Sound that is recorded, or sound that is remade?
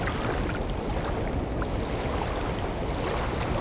recorded